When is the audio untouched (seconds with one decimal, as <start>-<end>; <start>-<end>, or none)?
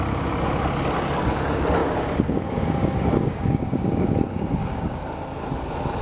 0.0-1.8; 5.0-6.0